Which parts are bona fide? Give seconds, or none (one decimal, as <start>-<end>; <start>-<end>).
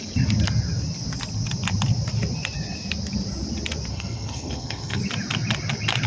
0.0-3.9; 5.0-6.1